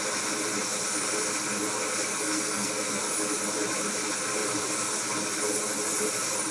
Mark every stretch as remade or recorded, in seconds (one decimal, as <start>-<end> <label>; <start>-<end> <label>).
0.0-2.1 recorded; 2.1-3.0 remade; 3.0-6.5 recorded